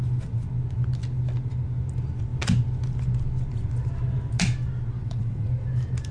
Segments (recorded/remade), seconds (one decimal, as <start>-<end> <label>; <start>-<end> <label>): 0.0-5.0 recorded; 5.0-5.5 remade; 5.5-6.1 recorded